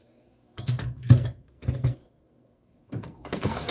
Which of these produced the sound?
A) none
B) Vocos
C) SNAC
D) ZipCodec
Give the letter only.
C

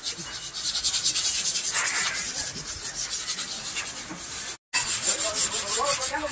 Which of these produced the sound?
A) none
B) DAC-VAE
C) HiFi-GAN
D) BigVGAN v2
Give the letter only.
A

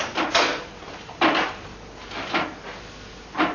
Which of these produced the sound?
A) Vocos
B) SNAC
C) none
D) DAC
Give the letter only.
C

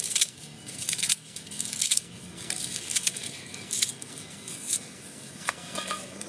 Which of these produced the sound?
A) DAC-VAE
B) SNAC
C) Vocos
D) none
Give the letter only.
B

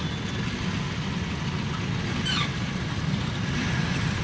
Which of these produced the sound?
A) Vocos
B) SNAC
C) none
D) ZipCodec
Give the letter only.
C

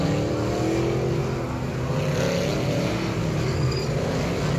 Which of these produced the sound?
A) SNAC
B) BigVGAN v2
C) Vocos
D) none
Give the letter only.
D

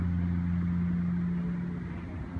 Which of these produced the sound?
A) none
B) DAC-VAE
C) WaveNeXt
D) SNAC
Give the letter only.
A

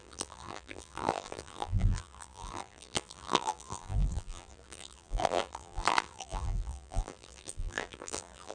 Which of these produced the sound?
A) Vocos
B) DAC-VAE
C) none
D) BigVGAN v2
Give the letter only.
D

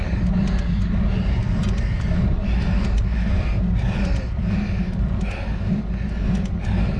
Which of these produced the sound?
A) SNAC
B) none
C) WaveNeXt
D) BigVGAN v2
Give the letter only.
B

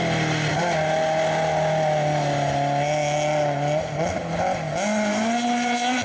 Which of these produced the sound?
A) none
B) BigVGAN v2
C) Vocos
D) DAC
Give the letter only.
A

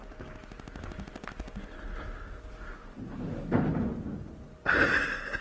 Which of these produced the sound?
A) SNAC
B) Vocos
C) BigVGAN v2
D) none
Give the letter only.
D